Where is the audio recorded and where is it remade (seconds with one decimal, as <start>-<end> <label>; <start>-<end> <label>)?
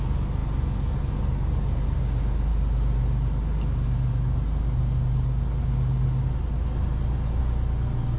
0.0-8.2 recorded